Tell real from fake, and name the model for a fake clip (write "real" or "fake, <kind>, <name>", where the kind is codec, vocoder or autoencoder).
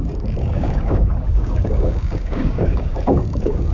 fake, codec, DAC